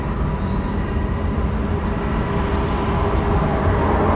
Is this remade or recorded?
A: recorded